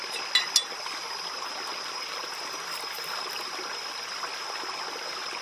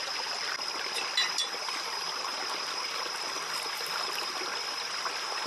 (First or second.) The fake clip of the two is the second